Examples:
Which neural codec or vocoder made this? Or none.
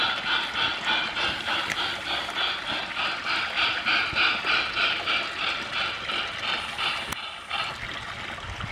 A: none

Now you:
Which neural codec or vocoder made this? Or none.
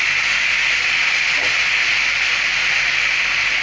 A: none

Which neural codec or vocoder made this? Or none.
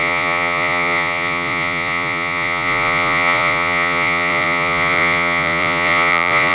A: vocoder, Vocos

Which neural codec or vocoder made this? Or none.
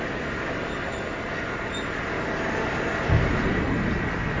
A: none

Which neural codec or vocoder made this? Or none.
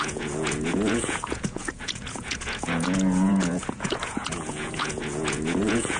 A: vocoder, Vocos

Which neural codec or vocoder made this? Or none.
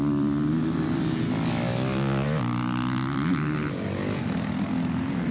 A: none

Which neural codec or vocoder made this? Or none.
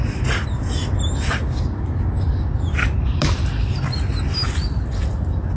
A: none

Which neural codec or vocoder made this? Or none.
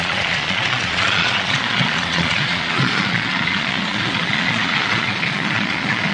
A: vocoder, Vocos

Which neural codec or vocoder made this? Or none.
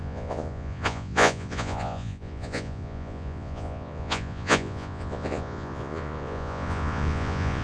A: vocoder, Vocos